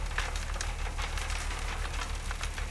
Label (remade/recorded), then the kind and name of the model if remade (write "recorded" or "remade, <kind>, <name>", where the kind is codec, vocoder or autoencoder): recorded